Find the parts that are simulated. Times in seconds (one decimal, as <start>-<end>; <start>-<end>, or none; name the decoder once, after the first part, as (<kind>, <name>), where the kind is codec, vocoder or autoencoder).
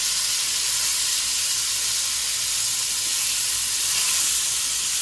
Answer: none